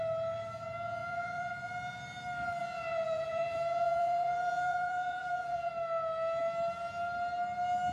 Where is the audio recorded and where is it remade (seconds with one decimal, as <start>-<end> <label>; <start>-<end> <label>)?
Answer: 0.0-1.0 recorded; 1.0-1.7 remade; 1.7-2.6 recorded; 2.6-5.7 remade; 5.7-7.9 recorded